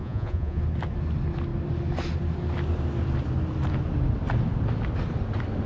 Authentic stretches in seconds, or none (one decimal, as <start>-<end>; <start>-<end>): 0.6-5.7